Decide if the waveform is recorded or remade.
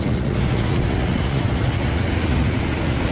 remade